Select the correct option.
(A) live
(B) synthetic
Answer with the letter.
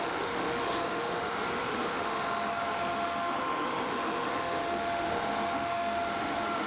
B